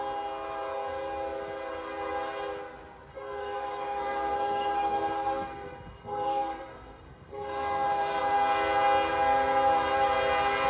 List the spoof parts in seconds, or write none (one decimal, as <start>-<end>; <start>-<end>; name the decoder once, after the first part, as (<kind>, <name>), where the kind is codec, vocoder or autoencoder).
3.1-8.2 (codec, SNAC)